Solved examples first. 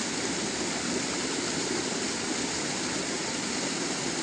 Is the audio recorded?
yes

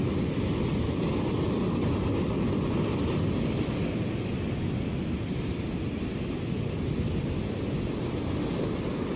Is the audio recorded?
yes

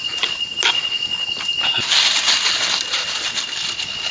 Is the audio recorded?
yes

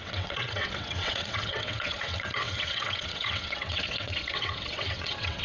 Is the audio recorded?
no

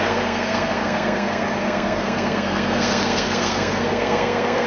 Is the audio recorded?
no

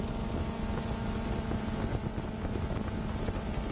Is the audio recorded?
yes